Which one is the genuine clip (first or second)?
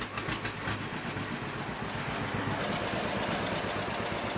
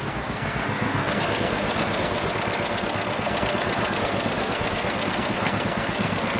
first